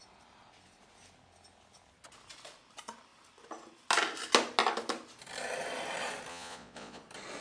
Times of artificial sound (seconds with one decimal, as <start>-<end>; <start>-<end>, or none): 6.3-7.0